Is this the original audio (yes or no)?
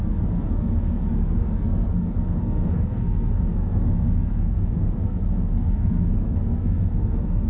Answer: no